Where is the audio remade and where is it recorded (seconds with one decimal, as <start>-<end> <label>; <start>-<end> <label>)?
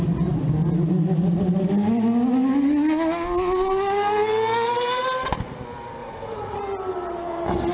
0.0-6.0 recorded; 6.0-6.6 remade; 6.6-7.7 recorded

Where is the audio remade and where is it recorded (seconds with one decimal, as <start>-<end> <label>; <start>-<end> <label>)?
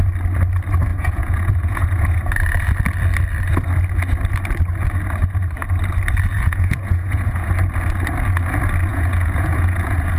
0.0-0.9 recorded; 0.9-2.2 remade; 2.2-6.3 recorded; 6.3-7.5 remade; 7.5-8.9 recorded; 8.9-10.2 remade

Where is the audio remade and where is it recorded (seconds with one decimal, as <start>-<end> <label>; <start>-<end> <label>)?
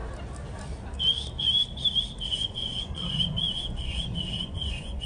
0.0-2.3 recorded; 2.3-5.1 remade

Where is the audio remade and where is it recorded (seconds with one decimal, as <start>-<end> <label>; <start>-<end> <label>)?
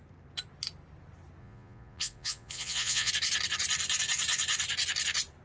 0.0-1.4 recorded; 1.4-3.1 remade; 3.1-5.4 recorded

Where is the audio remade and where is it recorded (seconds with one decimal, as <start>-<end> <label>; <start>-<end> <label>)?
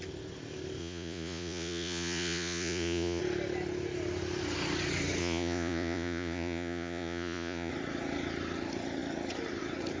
0.0-0.8 recorded; 0.8-3.2 remade; 3.2-5.2 recorded; 5.2-7.7 remade; 7.7-10.0 recorded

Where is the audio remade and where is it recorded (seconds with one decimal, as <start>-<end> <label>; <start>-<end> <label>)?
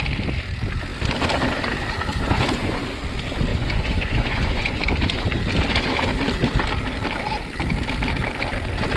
0.0-2.1 recorded; 2.1-2.8 remade; 2.8-3.5 recorded; 3.5-4.9 remade; 4.9-9.0 recorded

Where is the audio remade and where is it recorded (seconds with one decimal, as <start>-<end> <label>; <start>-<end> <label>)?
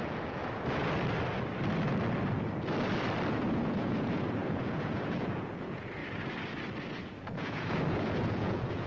0.0-0.4 remade; 0.4-3.3 recorded; 3.3-6.0 remade; 6.0-6.9 recorded; 6.9-8.9 remade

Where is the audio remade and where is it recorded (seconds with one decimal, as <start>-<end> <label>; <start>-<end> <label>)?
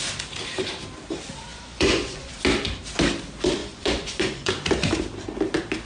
0.0-1.5 recorded; 1.5-2.3 remade; 2.3-3.6 recorded; 3.6-4.5 remade; 4.5-5.9 recorded